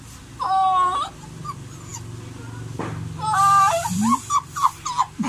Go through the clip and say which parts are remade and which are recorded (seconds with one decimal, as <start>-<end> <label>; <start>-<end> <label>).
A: 0.0-5.3 recorded